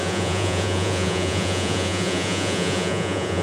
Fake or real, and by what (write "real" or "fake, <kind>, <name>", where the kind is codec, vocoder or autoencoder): fake, vocoder, Vocos